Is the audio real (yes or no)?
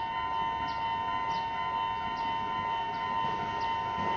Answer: yes